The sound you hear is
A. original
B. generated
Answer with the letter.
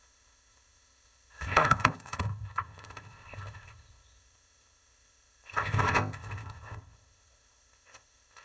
B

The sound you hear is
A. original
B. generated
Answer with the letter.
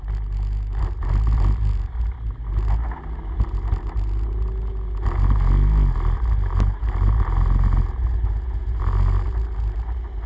A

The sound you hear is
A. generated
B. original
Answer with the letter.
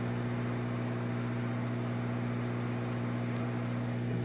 B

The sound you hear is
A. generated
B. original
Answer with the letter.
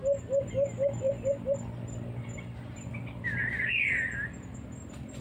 A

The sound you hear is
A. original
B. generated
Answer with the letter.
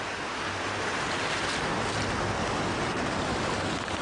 A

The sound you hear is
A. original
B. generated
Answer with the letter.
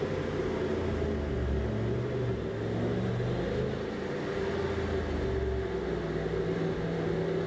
A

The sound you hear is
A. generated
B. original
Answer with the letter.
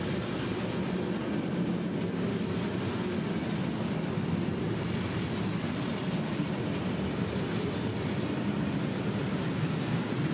B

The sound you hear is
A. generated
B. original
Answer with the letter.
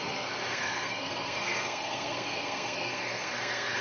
A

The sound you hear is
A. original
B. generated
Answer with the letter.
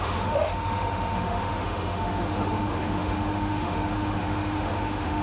B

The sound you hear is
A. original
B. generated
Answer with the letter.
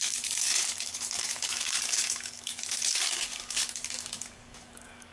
B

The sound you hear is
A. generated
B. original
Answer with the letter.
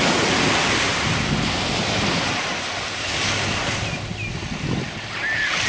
B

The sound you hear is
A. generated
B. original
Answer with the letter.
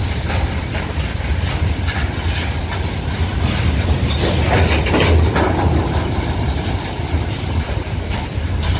B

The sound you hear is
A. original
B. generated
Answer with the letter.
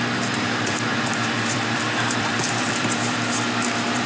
B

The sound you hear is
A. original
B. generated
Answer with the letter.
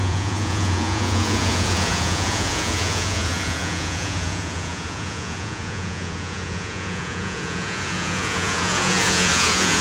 B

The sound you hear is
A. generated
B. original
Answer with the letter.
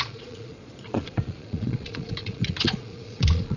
A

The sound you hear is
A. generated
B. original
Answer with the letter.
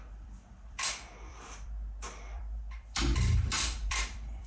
A